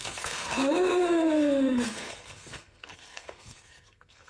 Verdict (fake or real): fake